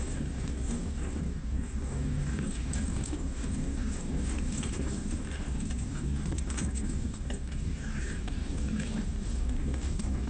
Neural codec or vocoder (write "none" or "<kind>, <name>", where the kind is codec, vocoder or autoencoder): codec, DAC